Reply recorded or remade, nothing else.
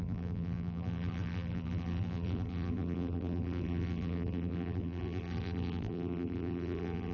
remade